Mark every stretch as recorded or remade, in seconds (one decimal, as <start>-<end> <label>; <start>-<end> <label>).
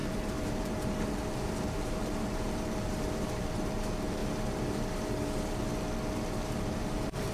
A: 0.0-4.2 remade; 4.2-6.6 recorded; 6.6-7.3 remade